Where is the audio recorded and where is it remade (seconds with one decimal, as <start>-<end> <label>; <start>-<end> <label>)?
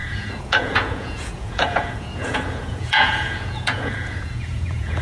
0.0-5.0 remade